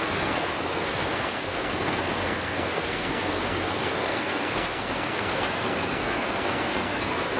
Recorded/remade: remade